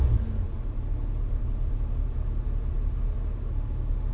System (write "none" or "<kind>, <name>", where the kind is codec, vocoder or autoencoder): none